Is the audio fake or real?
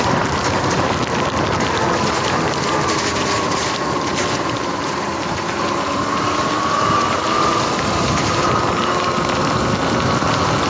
real